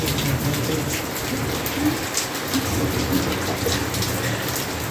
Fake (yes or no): no